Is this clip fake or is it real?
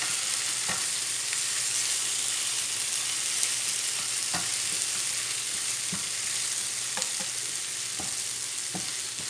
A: real